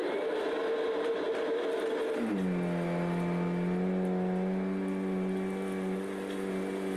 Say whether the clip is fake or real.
real